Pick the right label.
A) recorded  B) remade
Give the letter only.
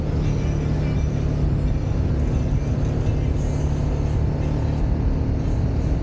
A